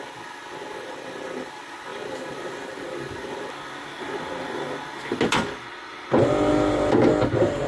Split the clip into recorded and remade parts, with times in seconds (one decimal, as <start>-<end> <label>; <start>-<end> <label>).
0.0-7.7 recorded